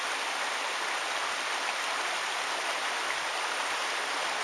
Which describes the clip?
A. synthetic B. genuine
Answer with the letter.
B